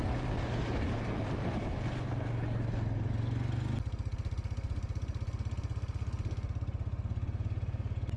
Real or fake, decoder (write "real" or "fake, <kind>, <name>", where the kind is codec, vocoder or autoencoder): real